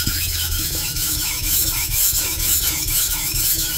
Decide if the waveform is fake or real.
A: fake